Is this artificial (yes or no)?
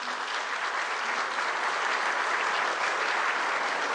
no